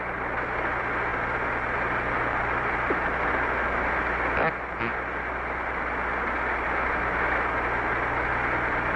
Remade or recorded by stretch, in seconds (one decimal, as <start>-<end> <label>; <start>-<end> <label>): 0.0-9.0 recorded